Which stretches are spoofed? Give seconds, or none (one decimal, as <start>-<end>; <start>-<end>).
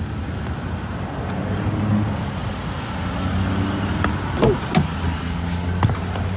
none